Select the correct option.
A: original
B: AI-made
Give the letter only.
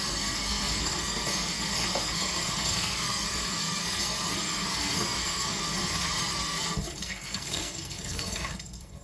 B